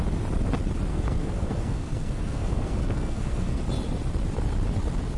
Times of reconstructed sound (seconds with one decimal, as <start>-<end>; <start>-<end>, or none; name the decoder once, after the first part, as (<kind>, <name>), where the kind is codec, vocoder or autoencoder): 0.9-3.6 (codec, SNAC)